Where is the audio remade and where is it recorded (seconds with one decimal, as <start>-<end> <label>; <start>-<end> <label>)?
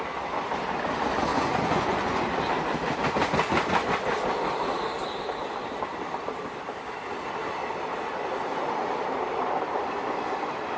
0.0-1.3 recorded; 1.3-2.2 remade; 2.2-10.8 recorded